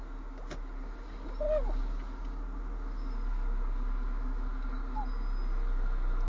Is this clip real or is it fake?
real